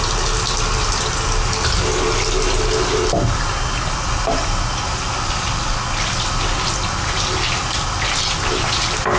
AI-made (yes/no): no